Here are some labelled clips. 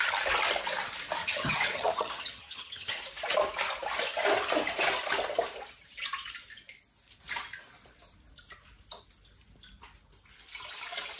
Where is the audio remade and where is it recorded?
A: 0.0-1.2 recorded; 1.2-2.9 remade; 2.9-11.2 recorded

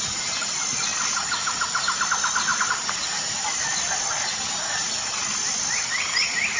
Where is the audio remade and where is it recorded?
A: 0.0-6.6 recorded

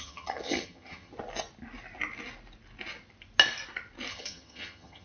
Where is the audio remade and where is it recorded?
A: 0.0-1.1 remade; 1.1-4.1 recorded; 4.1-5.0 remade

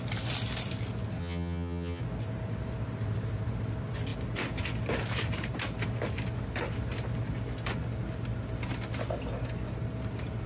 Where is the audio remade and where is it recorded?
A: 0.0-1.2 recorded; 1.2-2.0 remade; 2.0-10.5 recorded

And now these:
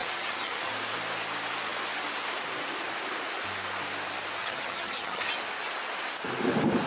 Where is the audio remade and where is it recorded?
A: 0.0-0.7 remade; 0.7-4.4 recorded; 4.4-5.3 remade; 5.3-6.9 recorded